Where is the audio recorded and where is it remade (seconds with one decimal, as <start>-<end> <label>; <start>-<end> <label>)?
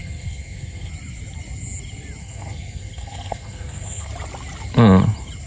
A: 0.0-0.9 remade; 0.9-2.2 recorded; 2.2-4.1 remade; 4.1-5.5 recorded